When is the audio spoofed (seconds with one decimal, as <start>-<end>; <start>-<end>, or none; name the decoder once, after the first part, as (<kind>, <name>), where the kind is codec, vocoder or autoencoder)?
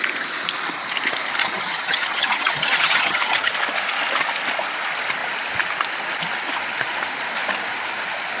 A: 1.4-3.5 (vocoder, HiFi-GAN)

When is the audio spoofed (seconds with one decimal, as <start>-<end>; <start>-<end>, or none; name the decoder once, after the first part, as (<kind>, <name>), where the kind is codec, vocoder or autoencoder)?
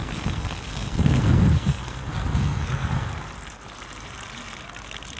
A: 0.0-3.1 (codec, SNAC)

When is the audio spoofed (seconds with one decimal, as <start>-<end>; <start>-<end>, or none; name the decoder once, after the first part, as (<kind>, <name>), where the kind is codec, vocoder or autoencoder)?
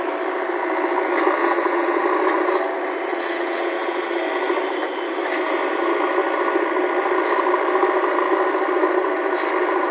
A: 1.4-2.0 (vocoder, WaveNeXt); 3.1-4.2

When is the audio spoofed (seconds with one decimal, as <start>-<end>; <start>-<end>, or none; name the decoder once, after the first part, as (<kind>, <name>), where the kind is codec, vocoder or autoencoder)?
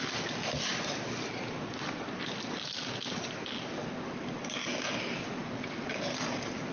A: none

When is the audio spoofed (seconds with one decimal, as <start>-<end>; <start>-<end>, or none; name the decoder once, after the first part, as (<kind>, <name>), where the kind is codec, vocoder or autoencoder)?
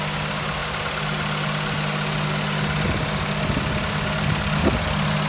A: none